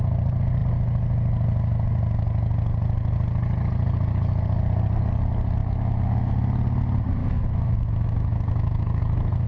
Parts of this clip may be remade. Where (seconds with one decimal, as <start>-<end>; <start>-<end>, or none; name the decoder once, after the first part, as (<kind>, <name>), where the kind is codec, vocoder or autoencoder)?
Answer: 5.6-6.3 (autoencoder, DAC-VAE); 7.2-9.5